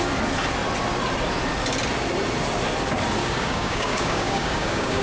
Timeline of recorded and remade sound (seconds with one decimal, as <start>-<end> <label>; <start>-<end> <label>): 0.0-3.2 recorded; 3.2-5.0 remade